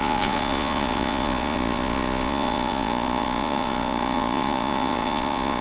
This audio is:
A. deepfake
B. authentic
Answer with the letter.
A